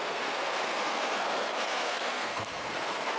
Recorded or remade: remade